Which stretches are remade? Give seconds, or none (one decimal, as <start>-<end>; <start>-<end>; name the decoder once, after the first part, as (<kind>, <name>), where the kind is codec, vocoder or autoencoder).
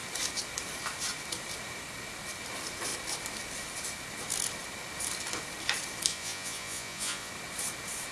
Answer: 6.1-7.3 (vocoder, Vocos)